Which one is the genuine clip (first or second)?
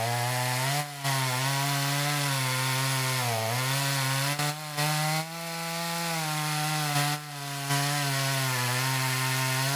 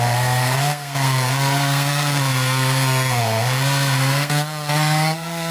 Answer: first